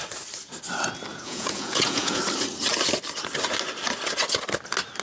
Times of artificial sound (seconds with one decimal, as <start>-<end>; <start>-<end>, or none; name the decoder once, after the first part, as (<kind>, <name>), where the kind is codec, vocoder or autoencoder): 1.1-2.2 (vocoder, Vocos)